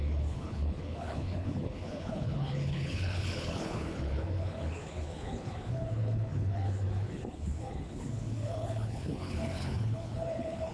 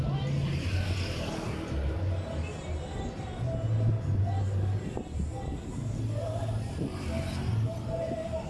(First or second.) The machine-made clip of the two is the first